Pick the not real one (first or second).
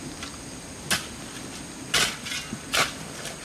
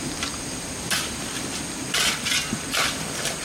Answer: second